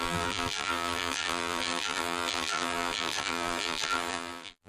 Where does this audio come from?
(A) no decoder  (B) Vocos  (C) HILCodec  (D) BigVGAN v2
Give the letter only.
D